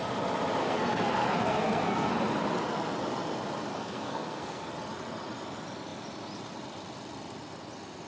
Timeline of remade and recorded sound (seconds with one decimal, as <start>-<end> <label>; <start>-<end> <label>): 0.0-0.6 recorded; 0.6-2.1 remade; 2.1-3.7 recorded; 3.7-4.7 remade; 4.7-8.1 recorded